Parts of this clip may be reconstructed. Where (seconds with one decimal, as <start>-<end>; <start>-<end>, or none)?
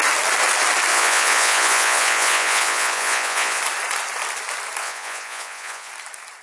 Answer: 0.9-3.6; 4.8-5.9